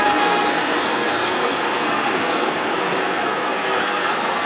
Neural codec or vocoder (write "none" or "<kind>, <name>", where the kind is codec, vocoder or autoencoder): codec, SNAC